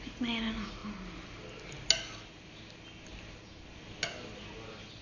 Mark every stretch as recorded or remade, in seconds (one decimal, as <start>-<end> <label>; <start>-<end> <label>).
0.0-5.0 recorded